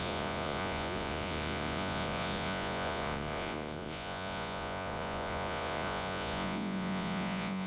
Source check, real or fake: fake